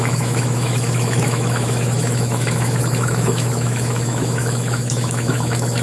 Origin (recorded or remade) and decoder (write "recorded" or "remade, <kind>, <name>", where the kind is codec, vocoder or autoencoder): remade, autoencoder, DAC-VAE